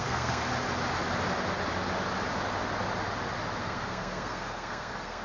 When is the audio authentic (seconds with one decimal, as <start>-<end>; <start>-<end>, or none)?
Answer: 0.5-3.6